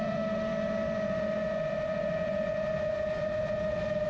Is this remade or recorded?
remade